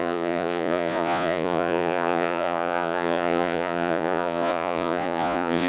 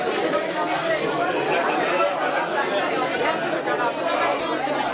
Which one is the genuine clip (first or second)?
second